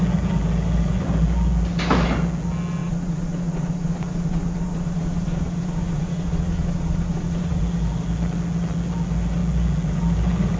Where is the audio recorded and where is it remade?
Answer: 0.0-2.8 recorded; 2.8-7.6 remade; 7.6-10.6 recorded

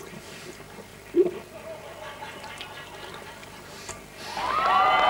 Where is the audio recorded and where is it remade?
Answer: 0.0-0.9 recorded; 0.9-2.5 remade; 2.5-3.4 recorded; 3.4-3.9 remade; 3.9-5.1 recorded